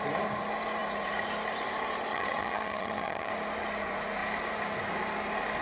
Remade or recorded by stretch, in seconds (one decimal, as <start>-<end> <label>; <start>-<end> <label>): 0.0-2.1 recorded; 2.1-3.3 remade; 3.3-5.6 recorded